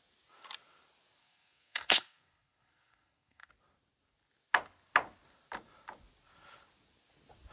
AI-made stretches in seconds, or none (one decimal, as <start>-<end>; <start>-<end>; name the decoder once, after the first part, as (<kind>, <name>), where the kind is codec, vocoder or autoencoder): 1.2-3.5 (codec, SNAC)